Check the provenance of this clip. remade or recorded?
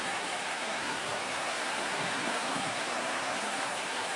remade